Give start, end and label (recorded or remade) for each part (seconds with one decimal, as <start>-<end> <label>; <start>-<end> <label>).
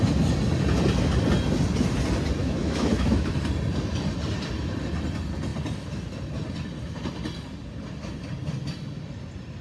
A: 0.0-2.4 recorded; 2.4-3.3 remade; 3.3-9.6 recorded